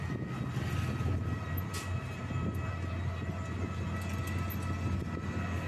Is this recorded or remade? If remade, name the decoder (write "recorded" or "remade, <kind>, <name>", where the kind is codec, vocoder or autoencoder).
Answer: recorded